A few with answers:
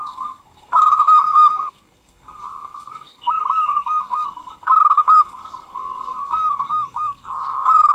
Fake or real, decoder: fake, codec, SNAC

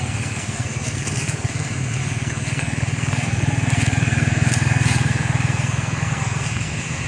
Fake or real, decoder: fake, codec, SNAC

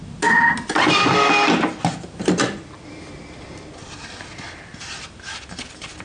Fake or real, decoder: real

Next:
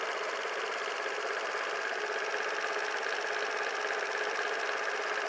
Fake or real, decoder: real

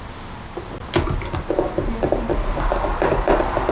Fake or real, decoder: real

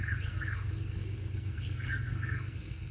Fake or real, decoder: fake, codec, SNAC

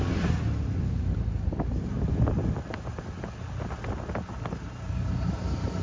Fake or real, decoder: real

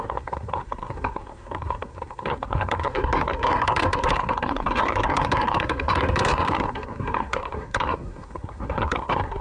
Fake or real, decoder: fake, codec, SNAC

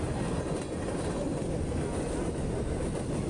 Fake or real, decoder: real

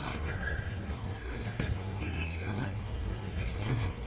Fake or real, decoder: fake, codec, SNAC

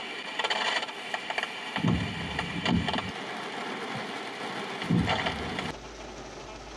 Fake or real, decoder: real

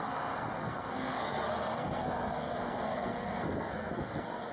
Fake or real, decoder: fake, codec, SNAC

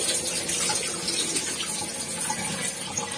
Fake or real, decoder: real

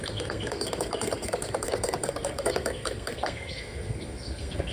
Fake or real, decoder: fake, codec, SNAC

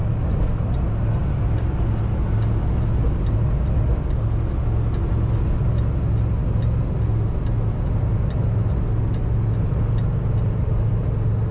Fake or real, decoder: real